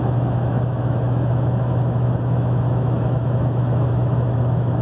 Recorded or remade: remade